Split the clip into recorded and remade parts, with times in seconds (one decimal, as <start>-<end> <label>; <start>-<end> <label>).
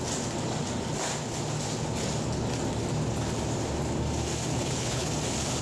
0.0-4.5 recorded; 4.5-5.1 remade; 5.1-5.6 recorded